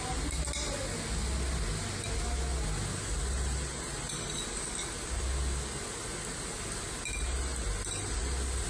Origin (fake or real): real